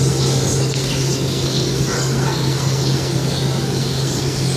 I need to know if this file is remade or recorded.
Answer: remade